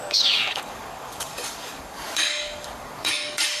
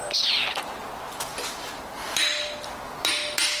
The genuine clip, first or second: second